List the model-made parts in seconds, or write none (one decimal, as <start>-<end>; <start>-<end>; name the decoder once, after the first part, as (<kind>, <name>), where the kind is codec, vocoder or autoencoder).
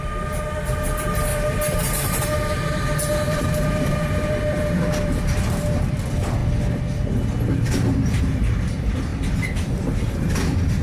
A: 1.3-5.9 (vocoder, BigVGAN v2)